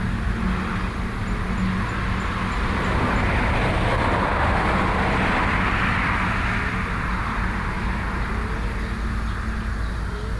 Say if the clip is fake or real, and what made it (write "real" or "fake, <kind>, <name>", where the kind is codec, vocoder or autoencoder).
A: real